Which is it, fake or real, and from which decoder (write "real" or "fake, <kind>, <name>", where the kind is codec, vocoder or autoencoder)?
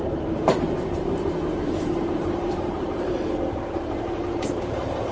fake, vocoder, BigVGAN v2